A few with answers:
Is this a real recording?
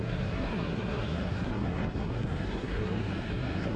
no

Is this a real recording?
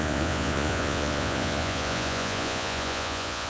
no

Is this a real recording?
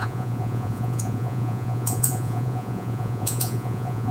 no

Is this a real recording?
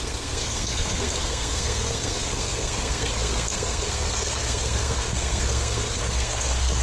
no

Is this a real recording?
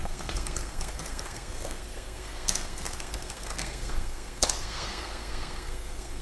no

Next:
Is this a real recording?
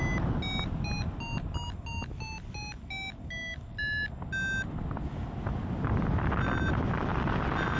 yes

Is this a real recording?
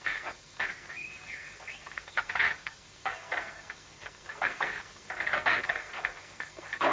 no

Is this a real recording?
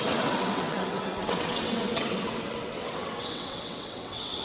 no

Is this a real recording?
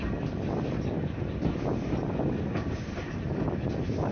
yes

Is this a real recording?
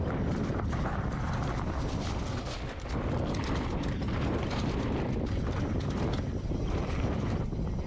no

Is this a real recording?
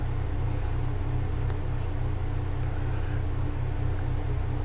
yes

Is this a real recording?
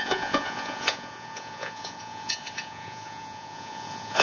no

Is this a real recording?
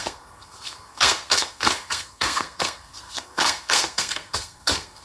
no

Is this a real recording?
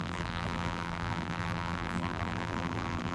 no